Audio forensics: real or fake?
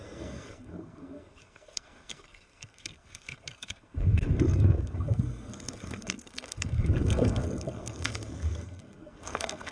fake